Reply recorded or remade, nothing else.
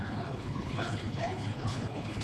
remade